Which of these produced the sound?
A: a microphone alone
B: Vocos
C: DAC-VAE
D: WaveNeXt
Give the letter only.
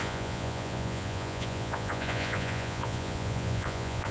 B